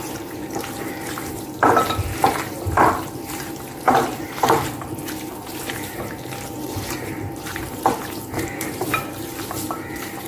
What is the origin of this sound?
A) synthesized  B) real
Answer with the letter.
A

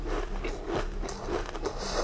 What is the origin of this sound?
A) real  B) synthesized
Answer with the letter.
A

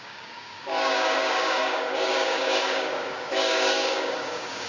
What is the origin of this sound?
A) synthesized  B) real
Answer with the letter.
A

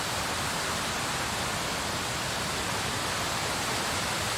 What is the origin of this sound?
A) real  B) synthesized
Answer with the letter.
A